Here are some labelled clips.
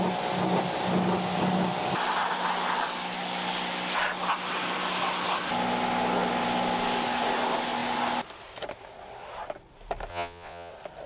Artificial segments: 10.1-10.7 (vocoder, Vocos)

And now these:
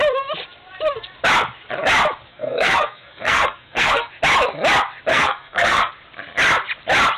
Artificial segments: 2.3-4.1 (codec, SNAC); 5.1-5.9

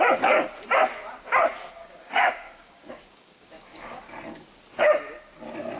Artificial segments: 1.8-4.0 (codec, DAC)

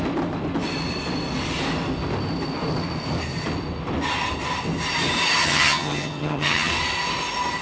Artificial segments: 5.4-6.7 (vocoder, HiFi-GAN)

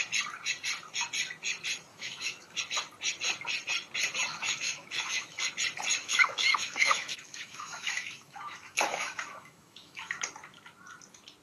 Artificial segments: 1.9-2.6 (autoencoder, DAC-VAE); 4.3-5.5; 6.0-10.1

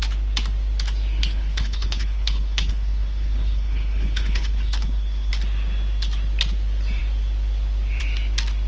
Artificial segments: 1.2-5.3 (codec, HILCodec)

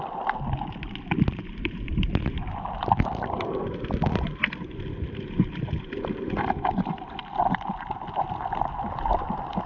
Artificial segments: 1.4-2.4 (vocoder, BigVGAN v2)

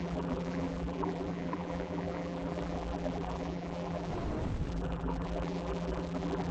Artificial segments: 0.0-4.1 (vocoder, BigVGAN v2); 4.7-6.5